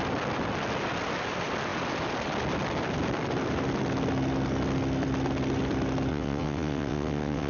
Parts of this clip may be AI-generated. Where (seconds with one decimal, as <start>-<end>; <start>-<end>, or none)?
6.1-7.5